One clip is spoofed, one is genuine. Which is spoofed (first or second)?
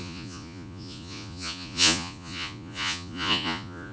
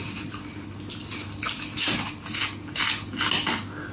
first